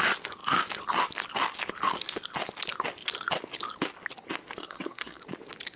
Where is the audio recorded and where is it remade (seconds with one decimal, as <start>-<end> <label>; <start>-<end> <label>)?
0.0-4.6 recorded; 4.6-5.2 remade; 5.2-5.8 recorded